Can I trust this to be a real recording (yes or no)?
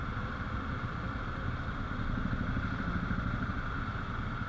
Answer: yes